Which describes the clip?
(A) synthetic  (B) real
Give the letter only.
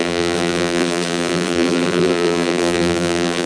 A